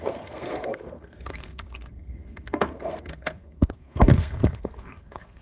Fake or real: fake